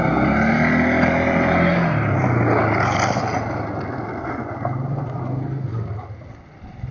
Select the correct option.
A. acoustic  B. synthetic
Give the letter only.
A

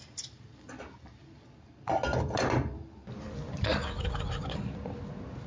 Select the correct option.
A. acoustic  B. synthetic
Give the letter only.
A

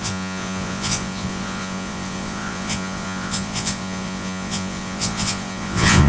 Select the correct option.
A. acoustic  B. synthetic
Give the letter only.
B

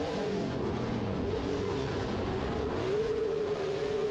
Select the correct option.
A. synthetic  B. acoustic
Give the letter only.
A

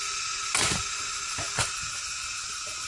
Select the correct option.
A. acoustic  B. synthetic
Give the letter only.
A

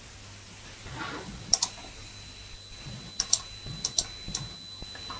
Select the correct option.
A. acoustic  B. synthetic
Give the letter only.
A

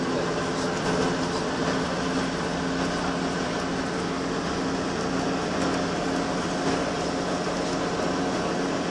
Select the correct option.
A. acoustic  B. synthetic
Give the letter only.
A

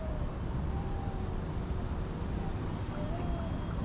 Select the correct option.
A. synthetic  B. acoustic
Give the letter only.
B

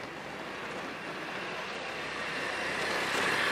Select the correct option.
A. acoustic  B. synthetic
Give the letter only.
A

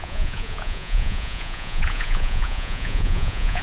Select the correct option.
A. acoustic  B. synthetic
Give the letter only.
B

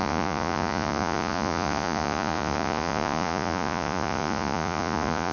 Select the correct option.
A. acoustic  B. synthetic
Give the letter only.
B